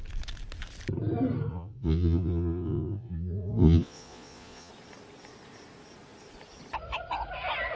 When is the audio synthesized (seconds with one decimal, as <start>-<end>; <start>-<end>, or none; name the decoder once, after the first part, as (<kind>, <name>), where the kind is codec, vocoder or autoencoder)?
1.5-4.7 (vocoder, Vocos)